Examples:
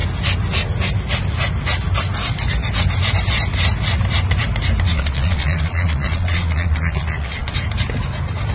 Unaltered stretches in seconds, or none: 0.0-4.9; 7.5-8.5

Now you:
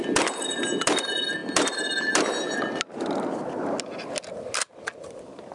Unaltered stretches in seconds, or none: 0.0-5.5

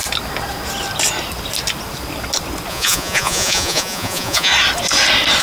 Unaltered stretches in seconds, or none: 0.0-2.7; 4.5-5.4

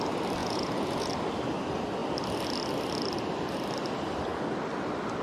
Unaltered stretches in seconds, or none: 0.0-0.4; 1.1-5.2

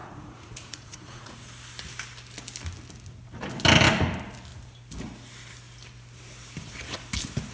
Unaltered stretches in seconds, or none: 1.3-7.5

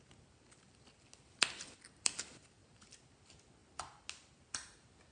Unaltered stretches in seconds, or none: 0.0-5.1

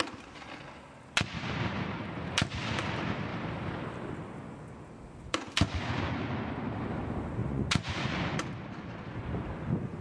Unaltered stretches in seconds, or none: 0.0-7.4; 8.5-10.0

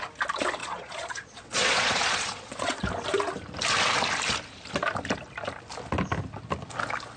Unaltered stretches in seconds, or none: 0.0-0.6; 2.8-7.2